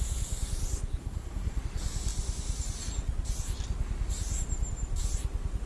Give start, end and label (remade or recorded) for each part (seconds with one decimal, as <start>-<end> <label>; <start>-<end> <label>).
0.0-1.0 recorded; 1.0-1.6 remade; 1.6-5.7 recorded